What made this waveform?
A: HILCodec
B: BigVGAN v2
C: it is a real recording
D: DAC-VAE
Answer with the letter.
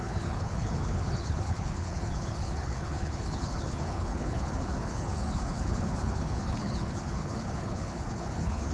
A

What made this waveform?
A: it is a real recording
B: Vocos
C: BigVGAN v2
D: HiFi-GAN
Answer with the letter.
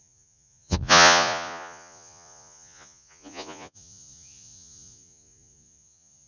B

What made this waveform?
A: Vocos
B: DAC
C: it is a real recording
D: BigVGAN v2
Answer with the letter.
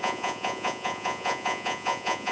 A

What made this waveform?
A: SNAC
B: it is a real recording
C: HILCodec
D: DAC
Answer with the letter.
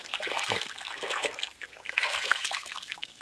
A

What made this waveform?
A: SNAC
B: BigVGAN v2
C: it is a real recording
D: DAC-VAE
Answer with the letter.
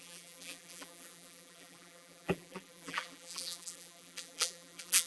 B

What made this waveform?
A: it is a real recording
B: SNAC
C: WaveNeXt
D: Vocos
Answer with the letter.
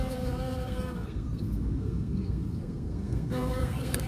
B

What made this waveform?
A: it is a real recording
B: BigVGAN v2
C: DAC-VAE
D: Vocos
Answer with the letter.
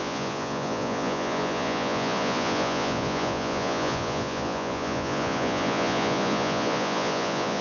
D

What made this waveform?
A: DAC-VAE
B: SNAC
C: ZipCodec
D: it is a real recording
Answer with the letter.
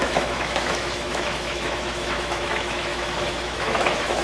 A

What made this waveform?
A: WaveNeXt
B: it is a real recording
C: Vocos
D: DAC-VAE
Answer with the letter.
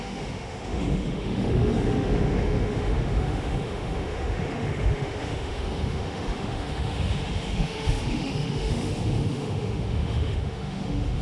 D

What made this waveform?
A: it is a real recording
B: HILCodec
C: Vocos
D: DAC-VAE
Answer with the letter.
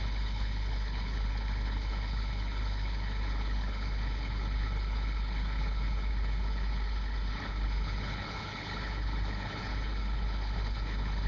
B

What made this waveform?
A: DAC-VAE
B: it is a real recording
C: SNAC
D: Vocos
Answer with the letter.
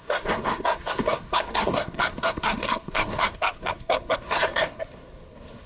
C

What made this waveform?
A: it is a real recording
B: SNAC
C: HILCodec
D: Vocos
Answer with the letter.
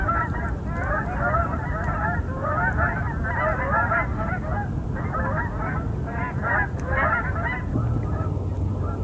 A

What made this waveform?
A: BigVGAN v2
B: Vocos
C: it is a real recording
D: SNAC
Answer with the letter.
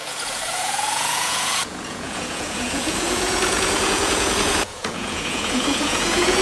B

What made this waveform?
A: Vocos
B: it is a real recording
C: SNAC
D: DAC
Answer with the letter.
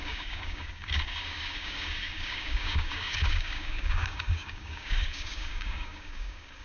D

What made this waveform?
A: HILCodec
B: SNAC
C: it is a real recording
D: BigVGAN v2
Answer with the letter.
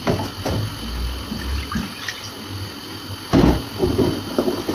C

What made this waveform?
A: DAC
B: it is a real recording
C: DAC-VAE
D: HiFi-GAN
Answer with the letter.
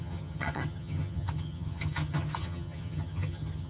D